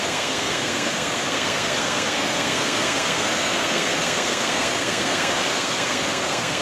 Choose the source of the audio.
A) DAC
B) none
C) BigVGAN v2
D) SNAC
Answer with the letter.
D